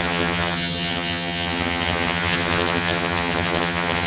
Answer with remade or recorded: remade